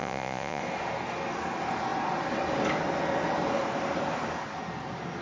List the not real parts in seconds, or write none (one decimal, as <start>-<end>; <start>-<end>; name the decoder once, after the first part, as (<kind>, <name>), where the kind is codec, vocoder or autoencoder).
0.0-0.6 (vocoder, Vocos)